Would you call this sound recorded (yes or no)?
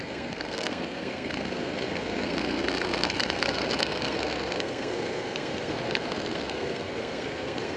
no